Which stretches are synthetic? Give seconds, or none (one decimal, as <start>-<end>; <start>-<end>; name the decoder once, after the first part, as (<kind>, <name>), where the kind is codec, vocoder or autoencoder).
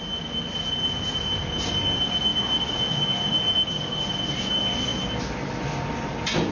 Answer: none